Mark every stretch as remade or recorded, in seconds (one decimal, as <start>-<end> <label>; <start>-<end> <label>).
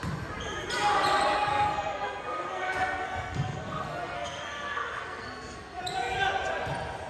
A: 0.0-1.5 recorded; 1.5-5.8 remade; 5.8-7.1 recorded